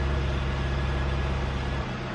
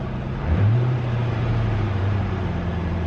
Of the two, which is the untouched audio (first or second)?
first